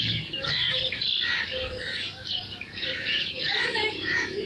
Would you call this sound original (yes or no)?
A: no